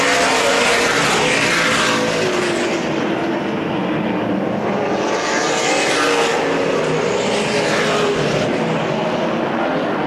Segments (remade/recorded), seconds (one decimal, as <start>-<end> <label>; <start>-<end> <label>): 0.0-10.1 recorded